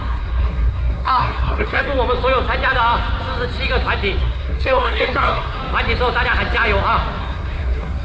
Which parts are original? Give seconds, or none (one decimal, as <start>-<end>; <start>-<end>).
1.8-4.2; 5.6-7.2